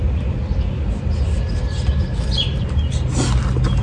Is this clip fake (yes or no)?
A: no